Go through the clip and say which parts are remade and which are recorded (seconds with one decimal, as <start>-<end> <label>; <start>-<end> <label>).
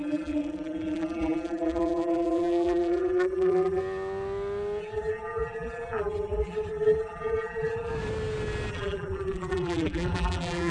0.0-3.8 remade; 3.8-4.8 recorded; 4.8-7.9 remade; 7.9-8.7 recorded; 8.7-10.7 remade